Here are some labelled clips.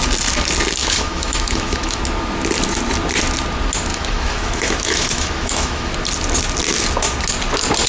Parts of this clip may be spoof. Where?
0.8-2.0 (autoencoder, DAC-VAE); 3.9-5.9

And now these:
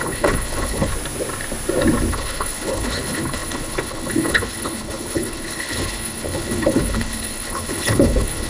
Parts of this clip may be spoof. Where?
0.0-0.9 (codec, HILCodec); 2.1-8.5

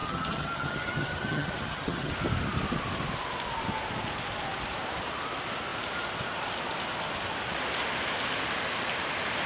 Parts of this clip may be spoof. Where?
0.0-2.1 (vocoder, HiFi-GAN)

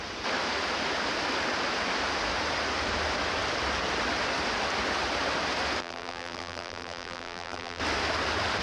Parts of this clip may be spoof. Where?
5.8-7.8 (vocoder, BigVGAN v2)

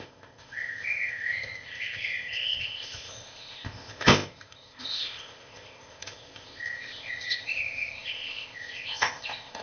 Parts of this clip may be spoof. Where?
0.0-9.6 (codec, ZipCodec)

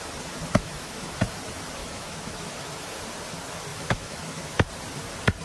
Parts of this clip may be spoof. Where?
0.6-1.2 (autoencoder, DAC-VAE); 1.8-3.0; 3.7-4.7

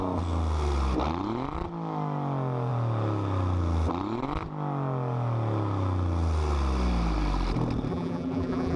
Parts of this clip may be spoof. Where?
7.9-8.8 (vocoder, BigVGAN v2)